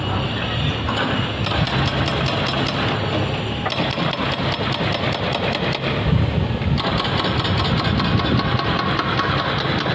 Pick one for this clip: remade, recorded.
recorded